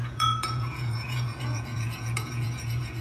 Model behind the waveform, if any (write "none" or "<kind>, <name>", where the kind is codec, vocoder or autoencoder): vocoder, Vocos